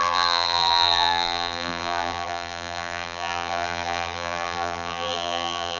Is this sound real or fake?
fake